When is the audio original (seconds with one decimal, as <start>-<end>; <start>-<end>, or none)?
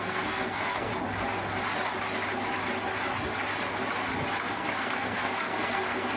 0.9-4.5